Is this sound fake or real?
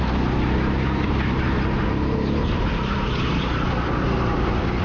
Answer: real